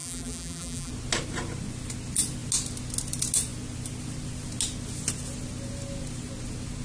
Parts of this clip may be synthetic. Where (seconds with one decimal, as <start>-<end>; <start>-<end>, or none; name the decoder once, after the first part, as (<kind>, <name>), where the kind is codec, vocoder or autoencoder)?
0.0-0.9 (vocoder, BigVGAN v2)